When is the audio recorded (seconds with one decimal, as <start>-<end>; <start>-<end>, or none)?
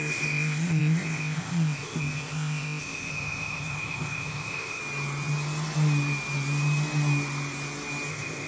4.8-8.1